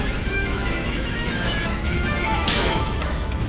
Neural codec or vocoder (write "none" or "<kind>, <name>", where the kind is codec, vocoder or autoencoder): autoencoder, DAC-VAE